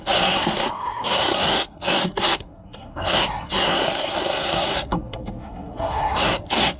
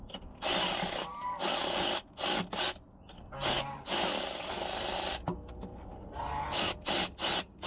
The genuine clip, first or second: second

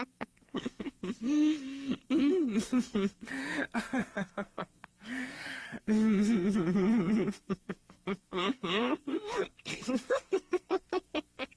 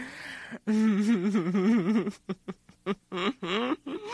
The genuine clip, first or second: second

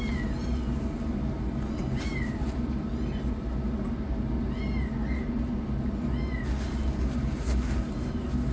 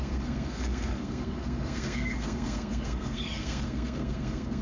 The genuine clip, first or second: first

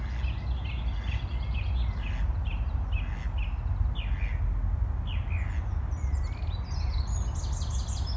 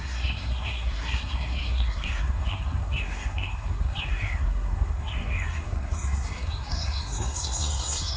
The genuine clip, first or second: first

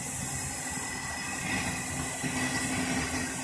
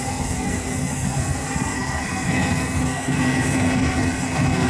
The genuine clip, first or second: first